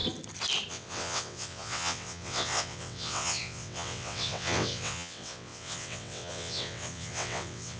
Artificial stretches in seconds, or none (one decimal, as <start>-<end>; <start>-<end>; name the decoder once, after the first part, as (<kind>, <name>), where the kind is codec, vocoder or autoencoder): 0.7-7.8 (vocoder, WaveNeXt)